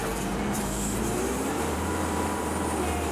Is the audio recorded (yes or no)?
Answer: no